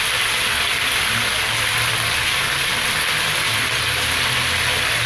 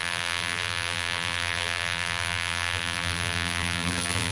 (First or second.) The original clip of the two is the first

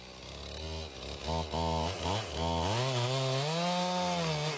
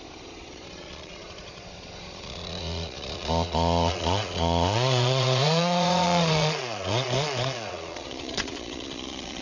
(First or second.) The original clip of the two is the first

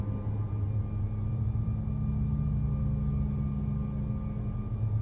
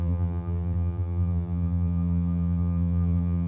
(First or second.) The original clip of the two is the first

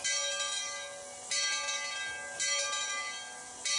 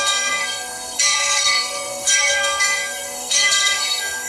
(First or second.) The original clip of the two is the first